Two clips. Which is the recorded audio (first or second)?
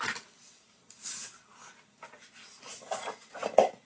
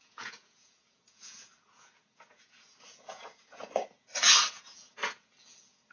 first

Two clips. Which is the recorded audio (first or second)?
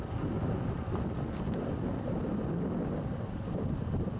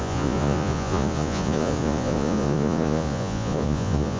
first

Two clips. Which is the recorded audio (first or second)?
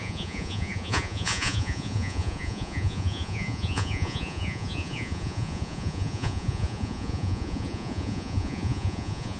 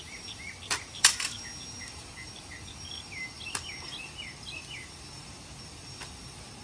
second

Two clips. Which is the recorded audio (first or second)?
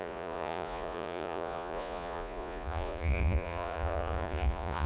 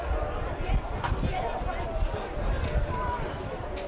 second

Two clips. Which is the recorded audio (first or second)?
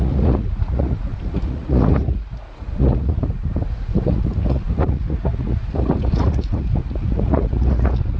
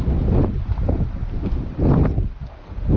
second